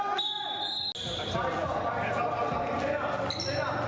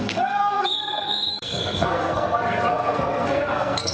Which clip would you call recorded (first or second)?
first